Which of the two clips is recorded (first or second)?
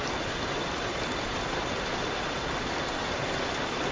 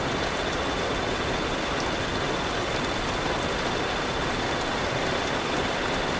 second